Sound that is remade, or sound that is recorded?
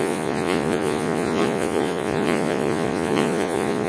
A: remade